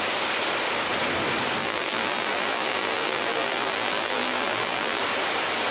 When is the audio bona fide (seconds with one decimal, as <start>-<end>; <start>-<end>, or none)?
0.0-1.6; 5.0-5.7